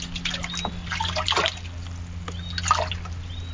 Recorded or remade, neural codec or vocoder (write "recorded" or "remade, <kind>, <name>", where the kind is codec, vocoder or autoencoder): recorded